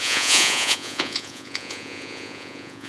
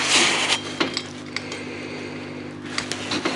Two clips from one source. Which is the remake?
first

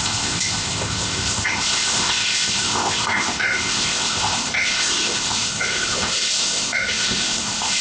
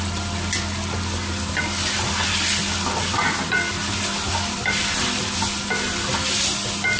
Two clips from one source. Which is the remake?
first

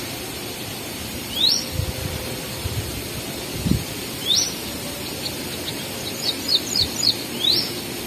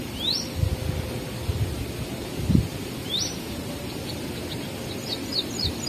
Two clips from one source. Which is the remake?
first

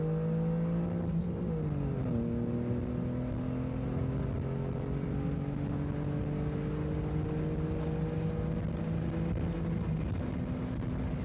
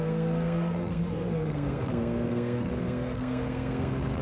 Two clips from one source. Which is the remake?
second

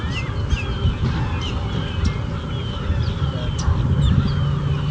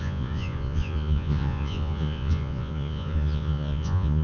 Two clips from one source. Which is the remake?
second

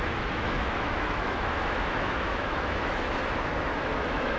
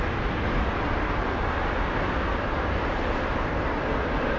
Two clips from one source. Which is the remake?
first